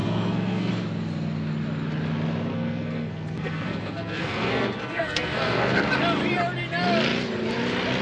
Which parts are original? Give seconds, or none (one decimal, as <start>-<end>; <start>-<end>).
0.7-2.5; 5.9-8.0